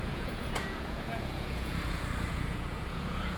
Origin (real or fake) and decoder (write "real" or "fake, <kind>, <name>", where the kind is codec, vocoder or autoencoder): fake, vocoder, Vocos